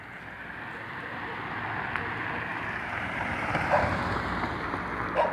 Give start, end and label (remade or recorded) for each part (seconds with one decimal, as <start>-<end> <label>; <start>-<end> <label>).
0.0-2.5 recorded; 2.5-4.7 remade; 4.7-5.3 recorded